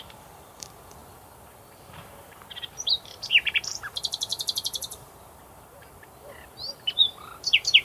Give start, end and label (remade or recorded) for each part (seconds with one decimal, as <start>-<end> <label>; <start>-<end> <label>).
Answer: 0.0-7.8 remade

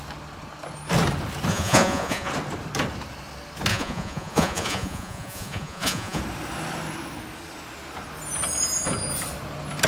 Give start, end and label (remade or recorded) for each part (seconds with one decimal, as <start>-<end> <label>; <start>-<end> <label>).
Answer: 0.0-1.5 recorded; 1.5-2.3 remade; 2.3-3.7 recorded; 3.7-6.2 remade; 6.2-9.9 recorded